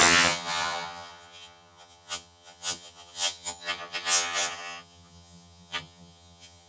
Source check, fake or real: fake